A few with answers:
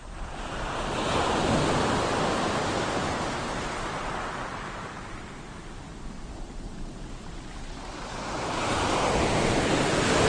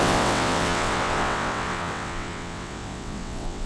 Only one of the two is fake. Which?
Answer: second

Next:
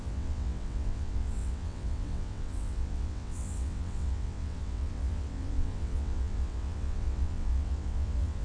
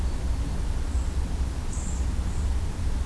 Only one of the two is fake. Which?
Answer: first